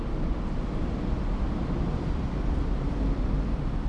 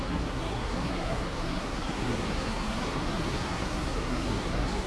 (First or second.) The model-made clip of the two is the second